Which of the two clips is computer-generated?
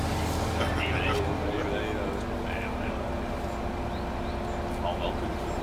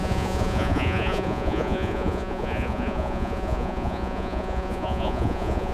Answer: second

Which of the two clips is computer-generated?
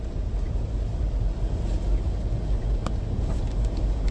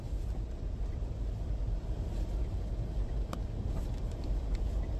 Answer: second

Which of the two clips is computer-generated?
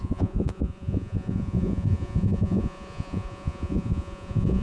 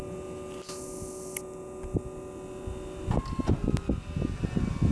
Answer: first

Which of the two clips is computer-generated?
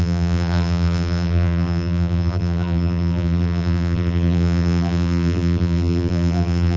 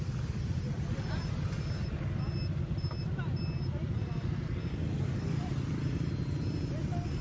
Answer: first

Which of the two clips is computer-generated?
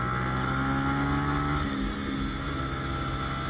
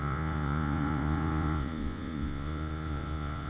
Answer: second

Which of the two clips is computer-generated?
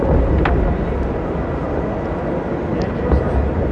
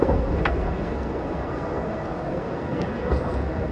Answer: second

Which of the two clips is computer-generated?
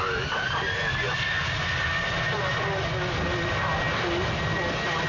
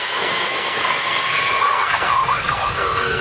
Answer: second